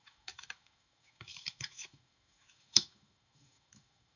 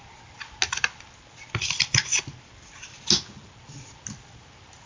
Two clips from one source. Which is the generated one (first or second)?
first